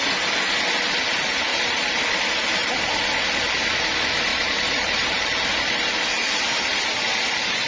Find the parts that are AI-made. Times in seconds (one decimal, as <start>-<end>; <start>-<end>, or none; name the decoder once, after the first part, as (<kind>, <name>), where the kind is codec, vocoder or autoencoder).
1.5-2.0 (vocoder, BigVGAN v2); 4.3-5.5